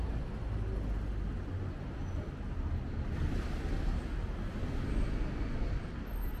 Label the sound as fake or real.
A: real